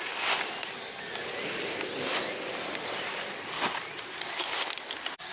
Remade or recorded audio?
recorded